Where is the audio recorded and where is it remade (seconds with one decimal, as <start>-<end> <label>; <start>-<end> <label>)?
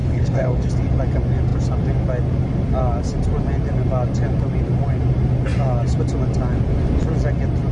0.0-0.7 remade; 0.7-7.7 recorded